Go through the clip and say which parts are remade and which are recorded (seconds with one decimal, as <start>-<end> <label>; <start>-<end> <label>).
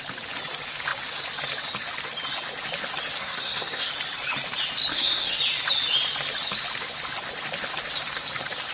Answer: 0.0-3.2 recorded; 3.2-3.9 remade; 3.9-4.9 recorded; 4.9-5.4 remade; 5.4-8.7 recorded